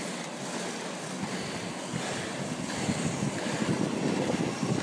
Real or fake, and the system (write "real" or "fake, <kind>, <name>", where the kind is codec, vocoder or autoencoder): real